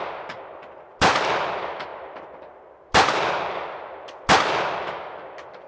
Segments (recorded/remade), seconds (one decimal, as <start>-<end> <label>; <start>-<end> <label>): 0.0-5.7 recorded